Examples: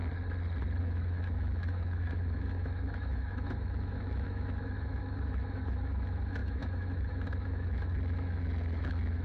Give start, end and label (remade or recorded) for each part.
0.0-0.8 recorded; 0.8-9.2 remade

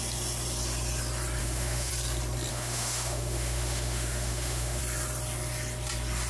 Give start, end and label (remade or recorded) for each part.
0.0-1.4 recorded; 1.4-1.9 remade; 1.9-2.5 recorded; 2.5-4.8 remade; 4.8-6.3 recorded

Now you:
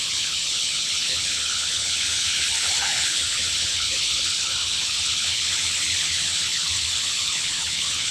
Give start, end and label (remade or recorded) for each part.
0.0-8.1 remade

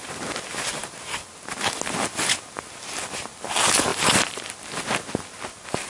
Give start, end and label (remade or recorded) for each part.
0.0-3.9 recorded; 3.9-4.4 remade; 4.4-5.9 recorded